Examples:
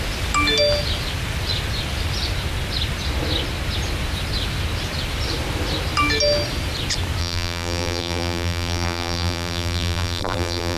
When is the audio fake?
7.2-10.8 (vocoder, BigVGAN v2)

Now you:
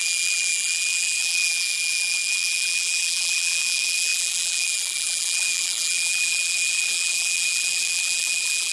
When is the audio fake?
0.0-8.7 (vocoder, BigVGAN v2)

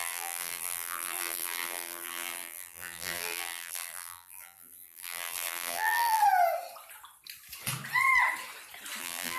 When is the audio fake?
0.0-6.2 (vocoder, BigVGAN v2); 9.0-9.4

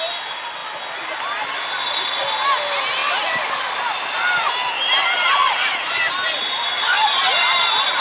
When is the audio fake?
3.0-5.9 (vocoder, BigVGAN v2)

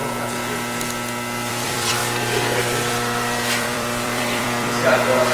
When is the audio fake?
1.5-2.0 (vocoder, BigVGAN v2); 2.6-5.3

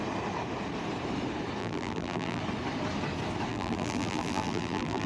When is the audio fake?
1.6-2.4 (vocoder, BigVGAN v2); 3.5-5.1